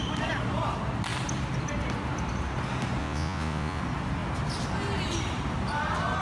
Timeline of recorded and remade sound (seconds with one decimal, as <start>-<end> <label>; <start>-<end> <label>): 0.0-3.0 recorded; 3.0-3.8 remade; 3.8-6.2 recorded